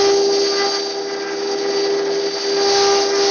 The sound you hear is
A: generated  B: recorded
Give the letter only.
B